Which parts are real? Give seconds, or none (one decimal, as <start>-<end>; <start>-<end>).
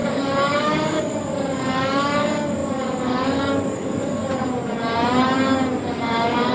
4.2-6.0